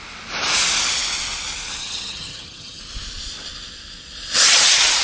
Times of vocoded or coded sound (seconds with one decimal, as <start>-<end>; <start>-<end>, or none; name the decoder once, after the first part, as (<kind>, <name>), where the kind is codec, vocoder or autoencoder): 1.8-2.8 (vocoder, HiFi-GAN)

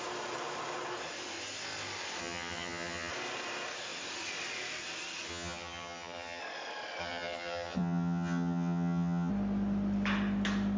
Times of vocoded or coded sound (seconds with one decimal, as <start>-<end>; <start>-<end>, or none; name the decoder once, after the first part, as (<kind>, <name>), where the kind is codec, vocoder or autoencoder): 2.2-3.1 (vocoder, HiFi-GAN); 5.3-6.4; 7.0-9.3

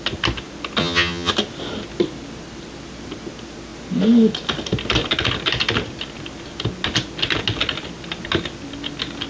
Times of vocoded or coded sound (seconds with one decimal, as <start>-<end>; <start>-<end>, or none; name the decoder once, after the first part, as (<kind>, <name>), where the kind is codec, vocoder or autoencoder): 0.8-1.3 (vocoder, HiFi-GAN)

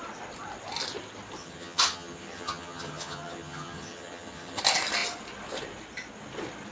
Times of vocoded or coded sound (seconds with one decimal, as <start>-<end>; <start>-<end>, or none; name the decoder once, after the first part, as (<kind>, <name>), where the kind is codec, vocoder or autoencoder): 1.4-4.6 (vocoder, HiFi-GAN)

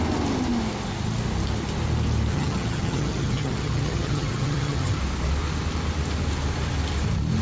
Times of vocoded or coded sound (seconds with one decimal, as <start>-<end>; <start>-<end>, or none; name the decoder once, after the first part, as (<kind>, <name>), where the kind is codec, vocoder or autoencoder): 2.3-5.0 (vocoder, HiFi-GAN)

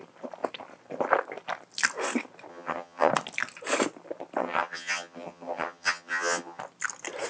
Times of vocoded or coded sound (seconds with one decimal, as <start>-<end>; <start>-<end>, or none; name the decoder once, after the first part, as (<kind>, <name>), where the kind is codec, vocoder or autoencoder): 2.5-3.1 (vocoder, HiFi-GAN); 4.4-6.6